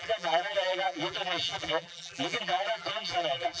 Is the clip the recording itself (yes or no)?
no